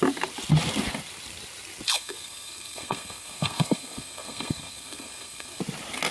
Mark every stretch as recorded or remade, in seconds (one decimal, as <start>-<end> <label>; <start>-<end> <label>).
0.0-1.9 recorded; 1.9-5.6 remade; 5.6-6.1 recorded